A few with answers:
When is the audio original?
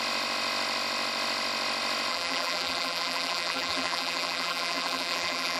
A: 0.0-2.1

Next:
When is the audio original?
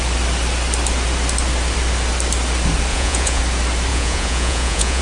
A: 0.0-2.9; 3.4-3.9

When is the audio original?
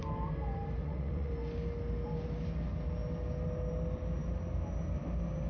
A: 0.0-0.8; 1.3-5.5